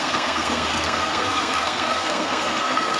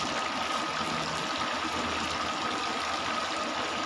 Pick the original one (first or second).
second